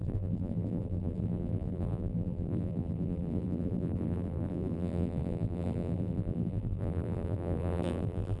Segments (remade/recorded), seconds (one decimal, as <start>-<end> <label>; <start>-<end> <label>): 0.0-8.4 remade

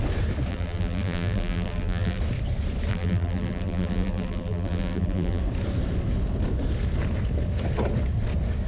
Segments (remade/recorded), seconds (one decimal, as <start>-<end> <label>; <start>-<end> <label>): 0.0-0.5 recorded; 0.5-2.2 remade; 2.2-2.9 recorded; 2.9-5.4 remade; 5.4-8.7 recorded